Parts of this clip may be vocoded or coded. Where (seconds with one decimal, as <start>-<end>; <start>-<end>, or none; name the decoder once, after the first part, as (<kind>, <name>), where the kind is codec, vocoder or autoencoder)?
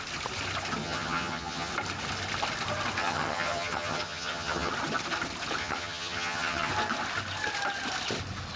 0.8-1.7 (vocoder, HiFi-GAN); 3.0-4.7; 5.6-6.7